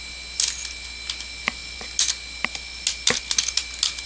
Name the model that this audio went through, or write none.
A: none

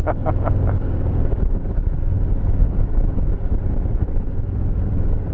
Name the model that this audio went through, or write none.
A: codec, DAC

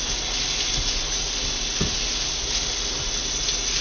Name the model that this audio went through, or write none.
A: none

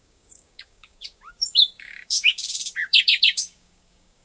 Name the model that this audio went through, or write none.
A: codec, DAC